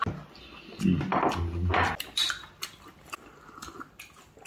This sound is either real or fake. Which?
real